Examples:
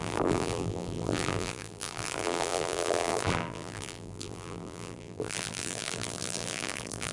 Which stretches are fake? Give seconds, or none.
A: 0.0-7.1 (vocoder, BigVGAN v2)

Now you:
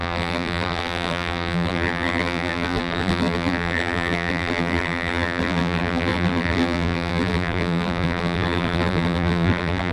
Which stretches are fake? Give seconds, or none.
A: 0.0-9.9 (vocoder, BigVGAN v2)